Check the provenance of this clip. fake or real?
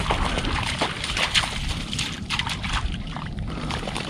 real